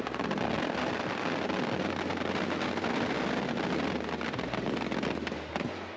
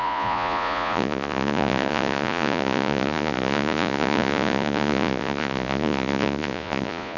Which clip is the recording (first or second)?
first